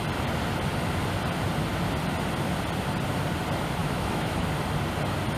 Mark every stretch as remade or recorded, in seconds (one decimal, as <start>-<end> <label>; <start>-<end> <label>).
0.0-3.8 recorded; 3.8-4.5 remade; 4.5-5.4 recorded

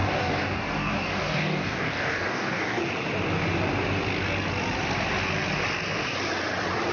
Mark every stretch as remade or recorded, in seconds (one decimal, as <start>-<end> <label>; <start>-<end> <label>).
0.0-2.8 remade; 2.8-6.9 recorded

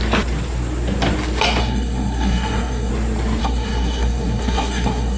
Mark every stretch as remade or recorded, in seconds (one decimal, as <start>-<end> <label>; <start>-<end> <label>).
0.0-1.6 recorded; 1.6-2.9 remade; 2.9-3.4 recorded; 3.4-5.2 remade

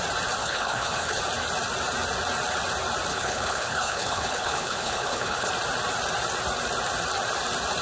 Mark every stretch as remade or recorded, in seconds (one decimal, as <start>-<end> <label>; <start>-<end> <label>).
0.0-0.4 recorded; 0.4-1.2 remade; 1.2-3.1 recorded; 3.1-5.5 remade; 5.5-7.8 recorded

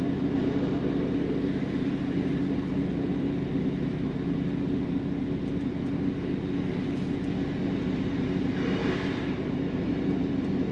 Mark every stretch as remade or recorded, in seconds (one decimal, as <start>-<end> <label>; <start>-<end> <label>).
0.0-8.8 recorded; 8.8-9.9 remade; 9.9-10.7 recorded